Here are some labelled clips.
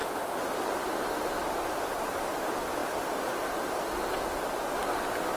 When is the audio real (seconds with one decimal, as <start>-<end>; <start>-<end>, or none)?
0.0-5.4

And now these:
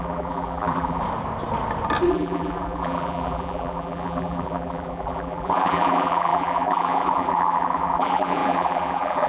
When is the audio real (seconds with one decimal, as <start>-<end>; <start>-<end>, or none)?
1.0-2.1

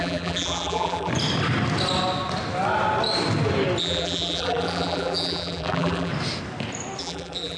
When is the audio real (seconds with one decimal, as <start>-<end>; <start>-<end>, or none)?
1.1-3.8; 6.1-7.0